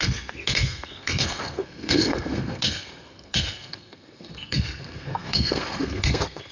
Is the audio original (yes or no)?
no